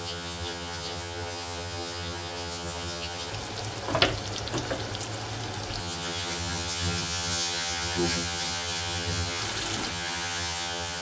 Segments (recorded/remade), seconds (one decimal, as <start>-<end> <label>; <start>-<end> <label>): 0.0-3.3 remade; 3.3-5.8 recorded; 5.8-9.4 remade; 9.4-9.9 recorded; 9.9-11.0 remade